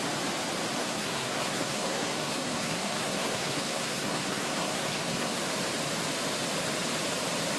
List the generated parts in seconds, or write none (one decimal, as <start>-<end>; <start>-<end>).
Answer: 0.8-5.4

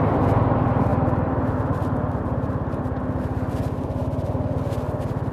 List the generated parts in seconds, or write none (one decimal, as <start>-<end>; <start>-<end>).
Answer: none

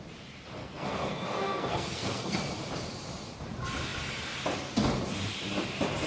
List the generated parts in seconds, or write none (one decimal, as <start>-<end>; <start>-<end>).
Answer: 0.6-2.4

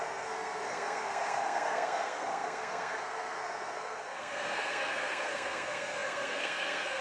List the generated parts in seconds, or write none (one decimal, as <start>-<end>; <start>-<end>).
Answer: 0.0-7.0

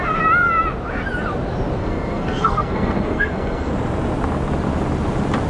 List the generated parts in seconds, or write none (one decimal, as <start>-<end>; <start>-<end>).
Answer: 1.8-3.7